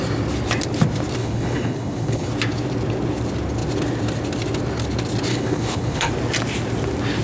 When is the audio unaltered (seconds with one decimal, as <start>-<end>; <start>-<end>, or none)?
0.0-1.2; 2.3-5.3; 6.1-7.2